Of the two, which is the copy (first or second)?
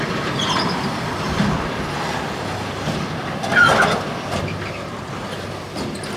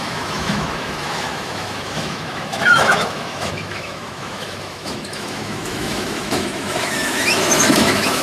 second